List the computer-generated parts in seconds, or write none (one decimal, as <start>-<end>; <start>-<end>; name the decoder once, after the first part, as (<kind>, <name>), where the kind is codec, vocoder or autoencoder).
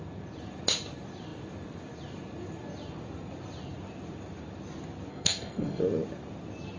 5.1-5.8 (codec, SNAC)